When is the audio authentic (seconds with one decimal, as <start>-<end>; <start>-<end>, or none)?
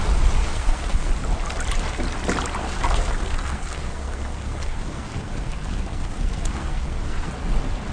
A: 0.0-0.4; 1.1-2.6; 7.3-7.9